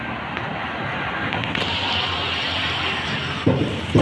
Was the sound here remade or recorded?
recorded